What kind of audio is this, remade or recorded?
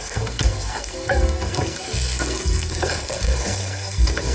remade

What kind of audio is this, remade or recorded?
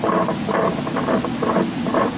recorded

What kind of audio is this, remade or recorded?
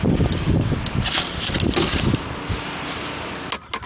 recorded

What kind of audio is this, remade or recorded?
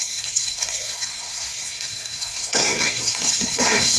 remade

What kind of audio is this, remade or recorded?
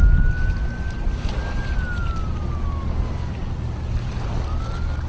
recorded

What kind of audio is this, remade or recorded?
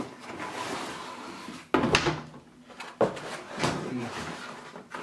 recorded